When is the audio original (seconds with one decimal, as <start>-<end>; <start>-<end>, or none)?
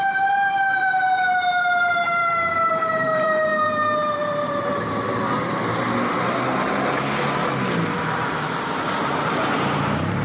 2.2-2.7; 5.7-9.0